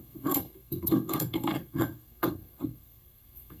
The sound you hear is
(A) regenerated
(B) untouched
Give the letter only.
A